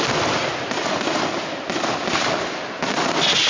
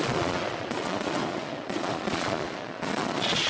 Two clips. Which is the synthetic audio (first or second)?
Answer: second